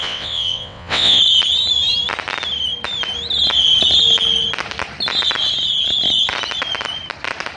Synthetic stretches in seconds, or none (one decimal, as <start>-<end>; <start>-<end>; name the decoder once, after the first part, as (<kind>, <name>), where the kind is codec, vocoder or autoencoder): 0.0-1.2 (vocoder, WaveNeXt)